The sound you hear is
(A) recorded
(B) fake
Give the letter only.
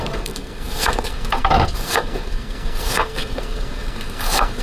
B